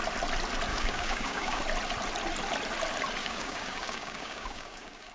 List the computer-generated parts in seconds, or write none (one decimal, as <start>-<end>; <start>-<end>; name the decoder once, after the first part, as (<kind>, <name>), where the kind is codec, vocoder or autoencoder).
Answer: 0.7-1.6 (codec, DAC); 3.2-5.1